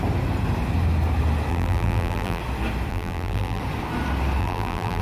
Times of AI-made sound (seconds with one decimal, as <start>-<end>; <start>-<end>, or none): 1.5-2.4; 2.9-3.6; 4.4-5.0